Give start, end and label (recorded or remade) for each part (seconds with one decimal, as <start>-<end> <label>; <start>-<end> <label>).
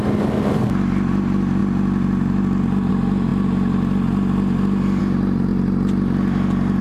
0.0-6.8 recorded